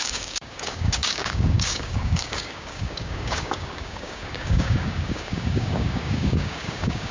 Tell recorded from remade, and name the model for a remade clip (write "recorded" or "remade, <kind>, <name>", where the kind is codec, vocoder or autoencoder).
remade, codec, DAC